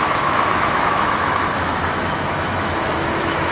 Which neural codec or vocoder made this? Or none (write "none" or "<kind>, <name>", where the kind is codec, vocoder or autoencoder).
autoencoder, DAC-VAE